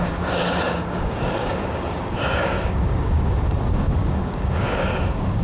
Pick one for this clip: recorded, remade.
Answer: remade